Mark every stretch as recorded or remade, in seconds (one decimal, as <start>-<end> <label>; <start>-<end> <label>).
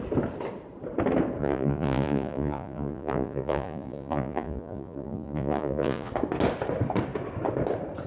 0.0-1.4 recorded; 1.4-6.1 remade; 6.1-8.1 recorded